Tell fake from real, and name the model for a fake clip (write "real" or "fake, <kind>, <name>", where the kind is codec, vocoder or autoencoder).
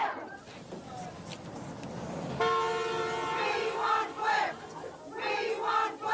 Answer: real